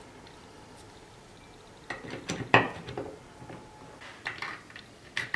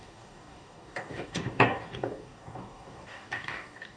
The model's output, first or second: second